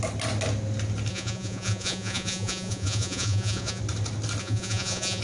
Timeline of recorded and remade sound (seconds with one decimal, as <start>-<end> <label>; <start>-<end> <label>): 0.0-1.1 recorded; 1.1-3.8 remade; 3.8-4.4 recorded; 4.4-5.2 remade